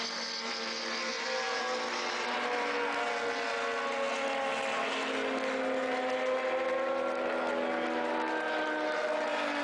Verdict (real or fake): real